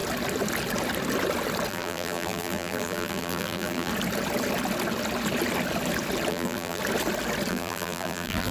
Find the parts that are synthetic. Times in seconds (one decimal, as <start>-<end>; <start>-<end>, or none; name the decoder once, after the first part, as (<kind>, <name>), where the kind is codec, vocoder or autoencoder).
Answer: 1.7-3.9 (vocoder, BigVGAN v2); 6.3-6.8; 7.5-8.5